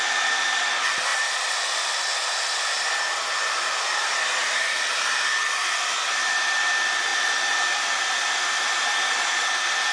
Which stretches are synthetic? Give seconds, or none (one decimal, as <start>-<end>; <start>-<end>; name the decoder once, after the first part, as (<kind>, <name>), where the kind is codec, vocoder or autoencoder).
1.1-2.0 (vocoder, BigVGAN v2)